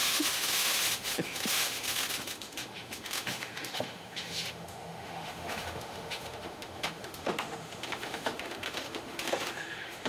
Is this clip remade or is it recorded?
remade